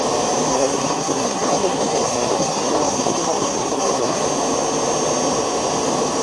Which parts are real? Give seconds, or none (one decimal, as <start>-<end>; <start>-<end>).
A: 0.0-0.5; 4.2-6.2